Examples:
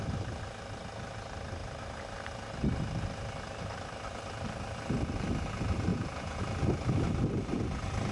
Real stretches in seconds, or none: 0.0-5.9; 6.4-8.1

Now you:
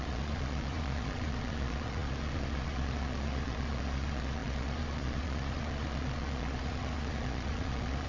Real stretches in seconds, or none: none